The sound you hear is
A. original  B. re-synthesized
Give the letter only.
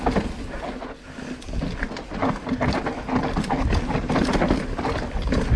A